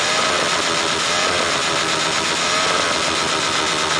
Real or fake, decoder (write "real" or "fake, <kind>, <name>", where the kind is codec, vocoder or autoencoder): real